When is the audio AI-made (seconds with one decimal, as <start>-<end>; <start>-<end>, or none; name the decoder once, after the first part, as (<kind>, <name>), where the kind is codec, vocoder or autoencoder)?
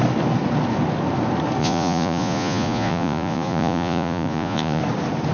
1.6-4.8 (vocoder, Vocos)